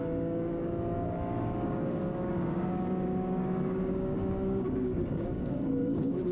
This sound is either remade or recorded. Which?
remade